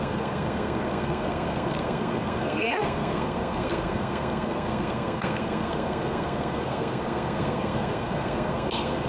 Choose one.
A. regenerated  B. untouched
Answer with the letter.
A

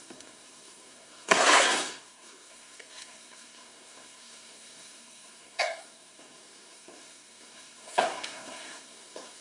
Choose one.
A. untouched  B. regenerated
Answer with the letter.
B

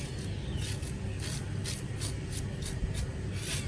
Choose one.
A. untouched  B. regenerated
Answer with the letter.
A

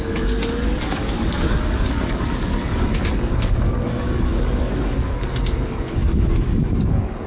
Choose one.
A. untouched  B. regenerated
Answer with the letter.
B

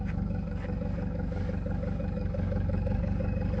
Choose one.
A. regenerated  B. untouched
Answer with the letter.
A